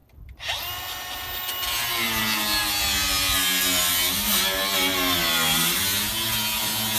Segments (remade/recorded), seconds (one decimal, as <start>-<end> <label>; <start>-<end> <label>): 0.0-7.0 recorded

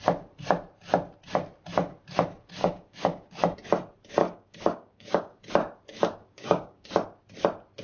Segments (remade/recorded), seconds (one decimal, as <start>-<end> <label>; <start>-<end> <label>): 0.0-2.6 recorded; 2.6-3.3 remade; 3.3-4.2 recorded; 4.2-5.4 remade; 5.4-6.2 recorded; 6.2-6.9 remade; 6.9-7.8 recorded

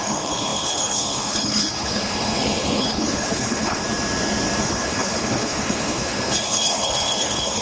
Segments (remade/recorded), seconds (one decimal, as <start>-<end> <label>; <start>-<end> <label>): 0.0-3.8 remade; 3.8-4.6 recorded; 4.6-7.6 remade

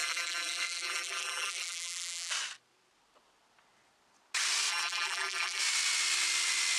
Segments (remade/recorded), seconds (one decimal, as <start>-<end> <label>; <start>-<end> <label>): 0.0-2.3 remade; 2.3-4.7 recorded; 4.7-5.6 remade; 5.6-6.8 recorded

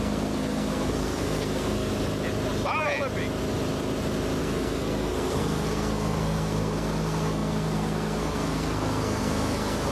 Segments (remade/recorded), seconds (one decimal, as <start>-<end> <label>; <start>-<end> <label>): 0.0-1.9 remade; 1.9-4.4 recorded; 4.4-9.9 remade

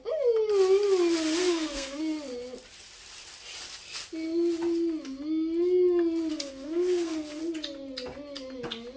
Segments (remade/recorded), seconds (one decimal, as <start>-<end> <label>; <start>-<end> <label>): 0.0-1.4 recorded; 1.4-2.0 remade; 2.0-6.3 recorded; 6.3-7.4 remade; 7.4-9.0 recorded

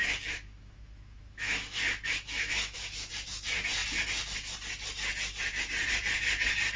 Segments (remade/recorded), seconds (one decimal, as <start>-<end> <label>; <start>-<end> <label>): 0.0-3.1 remade; 3.1-6.8 recorded